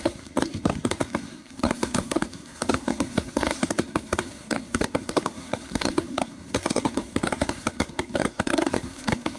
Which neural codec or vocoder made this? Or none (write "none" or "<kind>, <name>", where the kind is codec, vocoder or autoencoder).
codec, SNAC